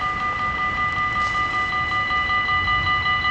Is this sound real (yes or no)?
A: yes